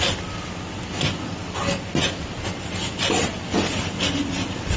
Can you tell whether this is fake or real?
real